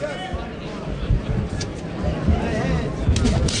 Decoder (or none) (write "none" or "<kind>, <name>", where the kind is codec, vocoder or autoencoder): none